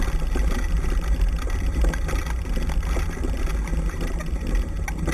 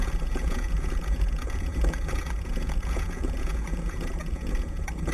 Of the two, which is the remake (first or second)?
second